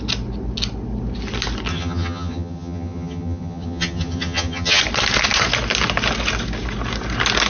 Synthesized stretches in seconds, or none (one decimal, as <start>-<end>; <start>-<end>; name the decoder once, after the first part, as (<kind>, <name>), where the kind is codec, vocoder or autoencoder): 1.7-4.8 (vocoder, HiFi-GAN)